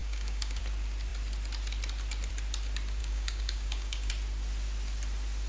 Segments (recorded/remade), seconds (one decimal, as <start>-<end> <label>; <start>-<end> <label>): 0.0-0.6 remade; 0.6-3.0 recorded; 3.0-4.1 remade; 4.1-5.5 recorded